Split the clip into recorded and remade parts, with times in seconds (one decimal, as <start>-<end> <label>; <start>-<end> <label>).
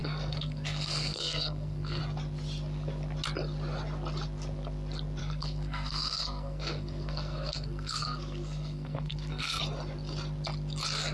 0.0-2.0 remade; 2.0-5.2 recorded; 5.2-9.6 remade; 9.6-11.1 recorded